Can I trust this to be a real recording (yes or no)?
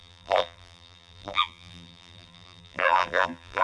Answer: no